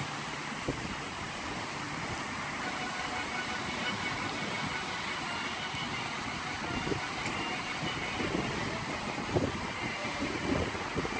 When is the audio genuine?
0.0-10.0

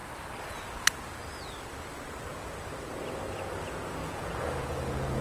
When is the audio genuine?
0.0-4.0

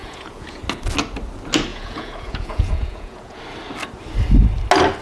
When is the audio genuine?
0.6-1.7; 3.4-5.0

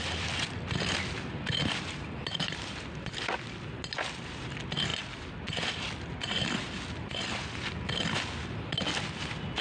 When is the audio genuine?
0.0-9.6

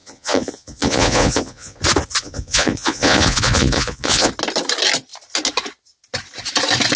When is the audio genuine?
1.8-2.2; 4.3-7.0